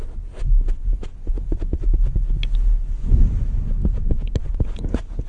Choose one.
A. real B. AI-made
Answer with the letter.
A